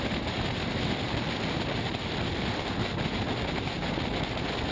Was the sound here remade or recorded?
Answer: recorded